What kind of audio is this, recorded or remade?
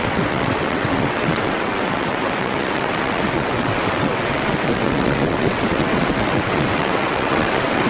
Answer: remade